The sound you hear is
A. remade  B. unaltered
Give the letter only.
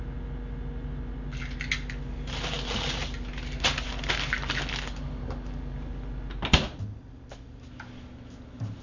B